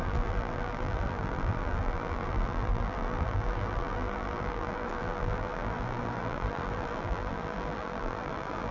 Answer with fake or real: fake